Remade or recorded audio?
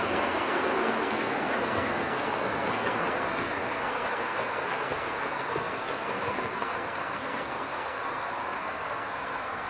remade